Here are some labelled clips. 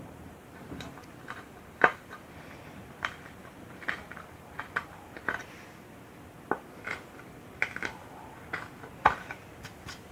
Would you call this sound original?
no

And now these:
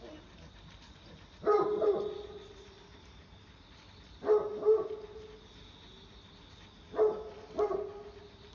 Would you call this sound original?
yes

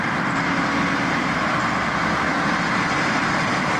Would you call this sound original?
yes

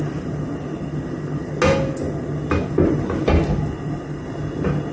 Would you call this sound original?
yes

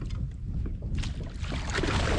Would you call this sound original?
yes